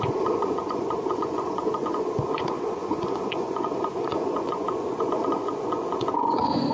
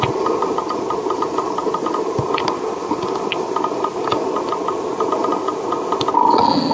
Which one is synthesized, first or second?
first